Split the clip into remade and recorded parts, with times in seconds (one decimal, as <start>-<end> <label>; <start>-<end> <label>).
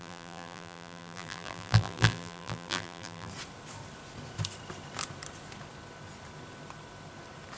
0.0-3.3 remade; 3.3-7.6 recorded